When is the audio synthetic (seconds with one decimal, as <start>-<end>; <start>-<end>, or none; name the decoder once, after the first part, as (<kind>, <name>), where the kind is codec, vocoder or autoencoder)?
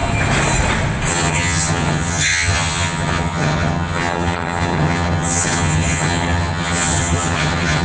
1.1-7.8 (vocoder, HiFi-GAN)